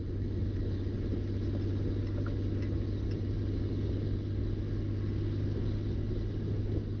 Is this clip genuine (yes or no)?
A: yes